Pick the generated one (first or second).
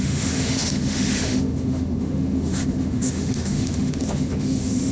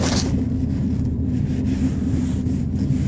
first